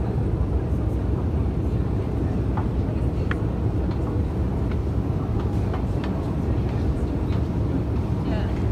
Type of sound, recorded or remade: recorded